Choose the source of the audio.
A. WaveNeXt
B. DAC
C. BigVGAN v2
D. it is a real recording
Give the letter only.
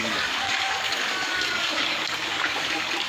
B